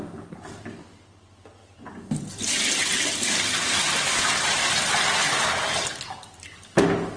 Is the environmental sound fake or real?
real